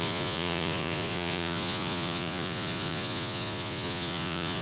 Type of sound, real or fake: fake